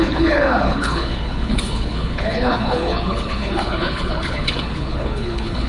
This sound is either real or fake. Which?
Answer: fake